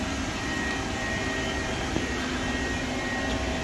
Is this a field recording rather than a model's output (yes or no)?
yes